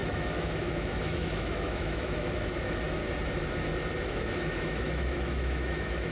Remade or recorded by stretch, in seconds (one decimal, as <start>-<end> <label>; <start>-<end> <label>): 0.0-3.0 remade; 3.0-4.0 recorded; 4.0-6.1 remade